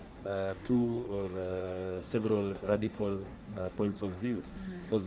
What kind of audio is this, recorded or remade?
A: remade